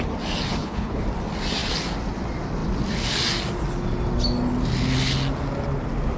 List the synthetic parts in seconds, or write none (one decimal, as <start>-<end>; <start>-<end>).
0.5-1.0